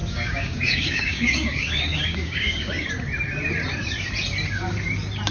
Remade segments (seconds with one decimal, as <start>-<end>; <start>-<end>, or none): 0.0-2.9